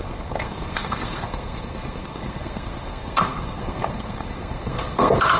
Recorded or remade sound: remade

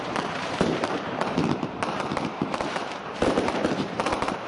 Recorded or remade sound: remade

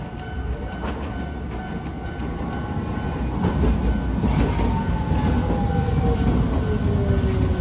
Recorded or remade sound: recorded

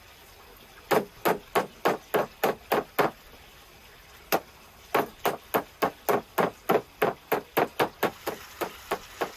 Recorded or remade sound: recorded